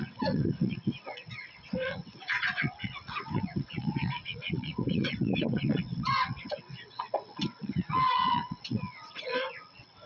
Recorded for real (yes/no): no